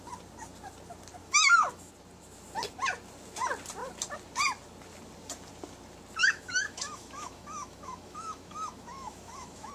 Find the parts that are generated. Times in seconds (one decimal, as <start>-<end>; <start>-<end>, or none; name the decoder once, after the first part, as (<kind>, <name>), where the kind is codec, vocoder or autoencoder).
1.2-1.9 (autoencoder, DAC-VAE); 6.2-9.7